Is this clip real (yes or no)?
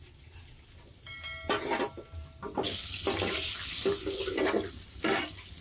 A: yes